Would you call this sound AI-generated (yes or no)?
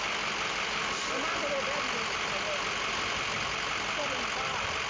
no